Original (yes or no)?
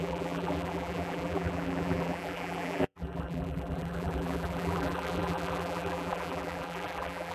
no